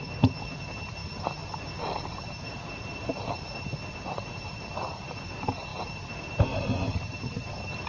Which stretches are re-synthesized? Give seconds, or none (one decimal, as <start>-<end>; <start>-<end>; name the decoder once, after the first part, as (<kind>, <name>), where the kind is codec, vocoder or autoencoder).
none